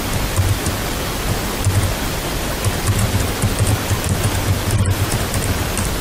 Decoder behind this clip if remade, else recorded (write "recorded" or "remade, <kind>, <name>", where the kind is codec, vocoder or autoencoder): recorded